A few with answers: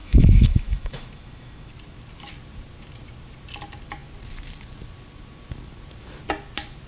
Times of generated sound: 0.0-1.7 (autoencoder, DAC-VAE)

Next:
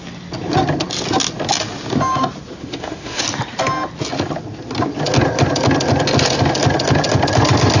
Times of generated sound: 2.6-3.2 (autoencoder, DAC-VAE)

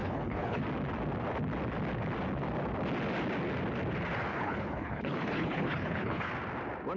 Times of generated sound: 0.0-0.6 (codec, HILCodec); 4.3-6.3

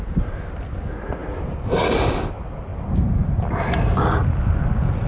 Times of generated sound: 2.7-3.6 (vocoder, BigVGAN v2)

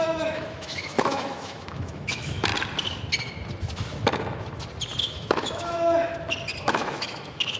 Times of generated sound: 0.0-2.5 (autoencoder, DAC-VAE); 5.0-6.1; 6.6-7.6

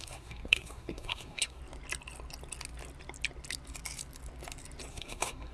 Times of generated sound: 0.0-1.6 (codec, SNAC); 4.9-5.5

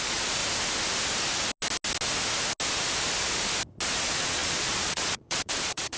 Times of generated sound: 0.0-0.4 (vocoder, Vocos); 4.0-6.0

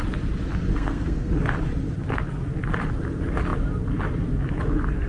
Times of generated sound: 0.7-1.3 (codec, SNAC)